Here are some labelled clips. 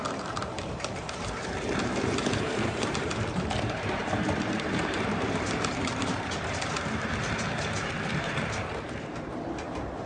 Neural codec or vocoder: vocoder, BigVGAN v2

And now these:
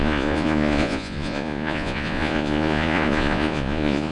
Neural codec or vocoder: vocoder, Vocos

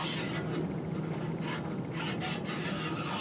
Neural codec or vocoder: none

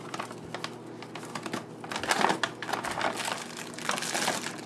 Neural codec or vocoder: none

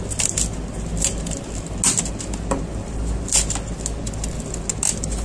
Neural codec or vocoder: none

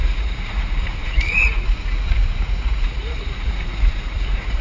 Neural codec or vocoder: vocoder, Vocos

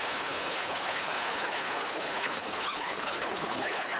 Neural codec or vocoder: codec, HILCodec